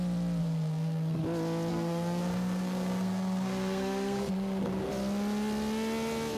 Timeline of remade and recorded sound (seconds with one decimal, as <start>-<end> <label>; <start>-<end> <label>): 0.0-0.4 recorded; 0.4-1.2 remade; 1.2-1.7 recorded; 1.7-4.9 remade; 4.9-6.4 recorded